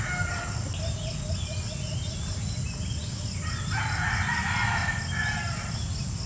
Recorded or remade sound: recorded